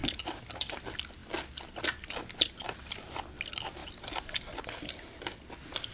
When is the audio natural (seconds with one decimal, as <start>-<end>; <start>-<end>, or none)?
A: 0.0-5.9